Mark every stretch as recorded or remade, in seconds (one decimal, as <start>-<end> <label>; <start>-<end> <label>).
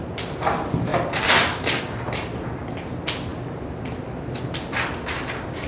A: 0.0-5.7 recorded